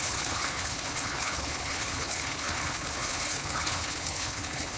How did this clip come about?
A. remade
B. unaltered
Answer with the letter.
A